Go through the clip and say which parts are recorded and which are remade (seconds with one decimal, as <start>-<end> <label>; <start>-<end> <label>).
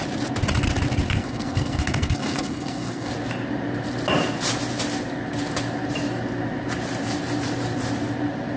0.0-1.2 recorded; 1.2-3.1 remade; 3.1-8.6 recorded